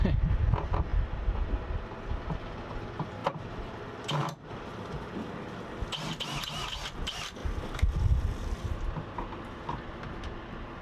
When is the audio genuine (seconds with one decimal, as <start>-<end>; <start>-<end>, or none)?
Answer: 0.0-3.2; 3.8-7.4; 8.2-10.8